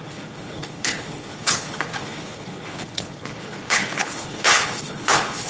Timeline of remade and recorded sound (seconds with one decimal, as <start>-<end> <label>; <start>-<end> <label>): 0.0-5.5 remade